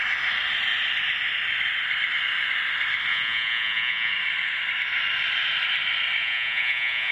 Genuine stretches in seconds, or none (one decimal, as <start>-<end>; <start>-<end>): 0.0-3.1; 4.1-6.2